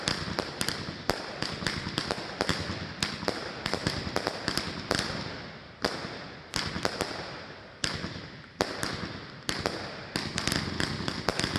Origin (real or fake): real